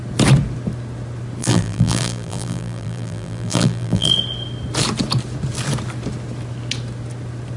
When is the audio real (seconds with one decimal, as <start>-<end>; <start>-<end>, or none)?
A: 0.0-1.4; 4.1-7.6